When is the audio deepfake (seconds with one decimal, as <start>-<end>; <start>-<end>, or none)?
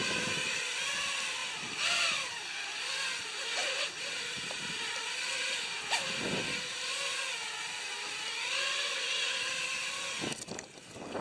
0.0-0.8; 1.4-2.7; 3.6-5.6